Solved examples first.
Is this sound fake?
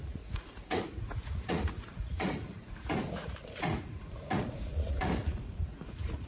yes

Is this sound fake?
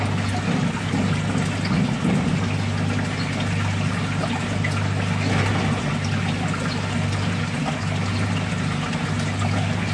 no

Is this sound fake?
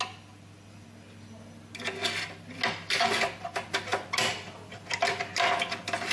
no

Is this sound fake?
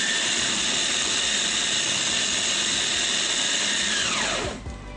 no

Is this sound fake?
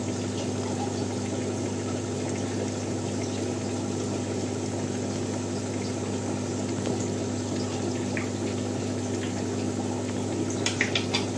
no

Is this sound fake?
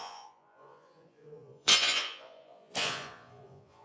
yes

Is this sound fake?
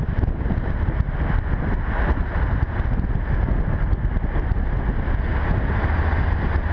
no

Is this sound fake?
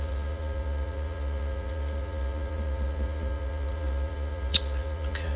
yes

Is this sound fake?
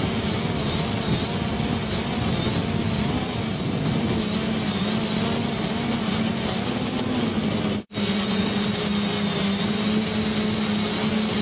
no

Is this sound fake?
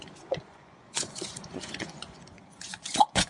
yes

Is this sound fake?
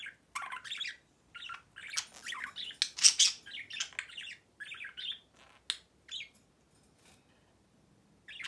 no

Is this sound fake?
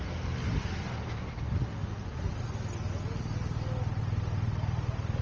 no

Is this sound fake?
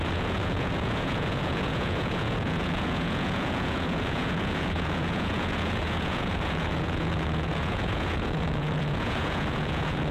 yes